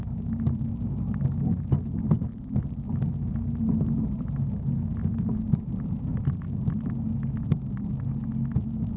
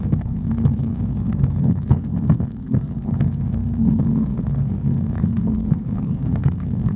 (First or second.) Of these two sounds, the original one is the first